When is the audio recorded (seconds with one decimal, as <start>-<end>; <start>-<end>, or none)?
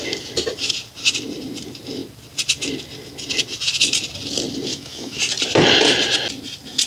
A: 0.0-4.7; 5.2-6.9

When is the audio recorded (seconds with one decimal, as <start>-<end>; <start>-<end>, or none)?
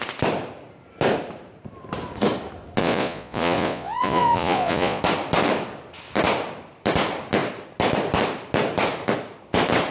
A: 0.0-2.8; 5.0-9.9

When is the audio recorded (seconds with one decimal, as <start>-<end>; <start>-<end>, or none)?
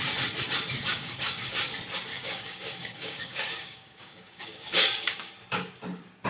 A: 0.0-0.9; 1.7-2.1; 5.3-6.3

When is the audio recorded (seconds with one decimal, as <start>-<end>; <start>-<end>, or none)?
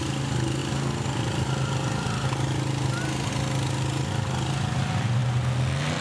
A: 0.0-6.0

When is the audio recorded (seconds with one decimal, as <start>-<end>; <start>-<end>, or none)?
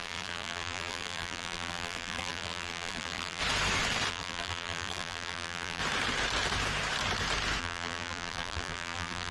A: 3.4-4.1; 5.8-7.6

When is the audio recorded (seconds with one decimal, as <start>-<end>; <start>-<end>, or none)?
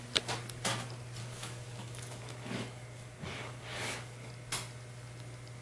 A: 0.0-1.2; 4.3-5.6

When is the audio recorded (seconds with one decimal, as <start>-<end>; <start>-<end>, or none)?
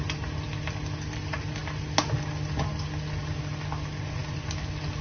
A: 0.0-5.0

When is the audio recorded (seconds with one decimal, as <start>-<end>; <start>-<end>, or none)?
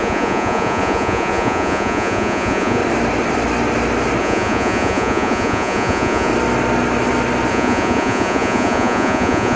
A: 2.8-4.2; 6.3-7.5